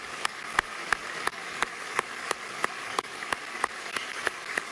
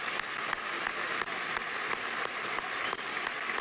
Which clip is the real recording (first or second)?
second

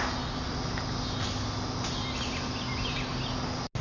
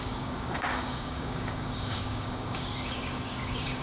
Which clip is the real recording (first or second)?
first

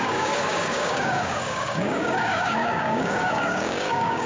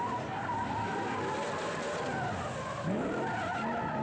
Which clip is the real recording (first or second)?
second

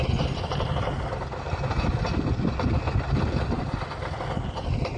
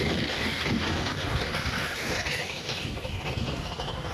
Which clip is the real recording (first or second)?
first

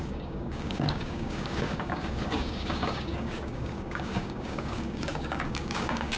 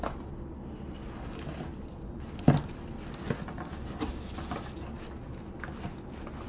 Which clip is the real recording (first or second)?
second